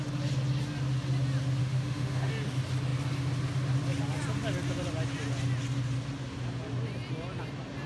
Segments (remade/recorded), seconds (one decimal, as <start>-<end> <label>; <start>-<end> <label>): 0.0-1.6 recorded; 1.6-2.3 remade; 2.3-7.9 recorded